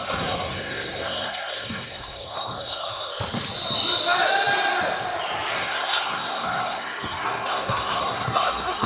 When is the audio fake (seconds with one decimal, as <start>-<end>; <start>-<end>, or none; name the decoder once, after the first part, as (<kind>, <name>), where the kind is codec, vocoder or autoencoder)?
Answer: 0.0-3.1 (codec, SNAC); 5.5-8.9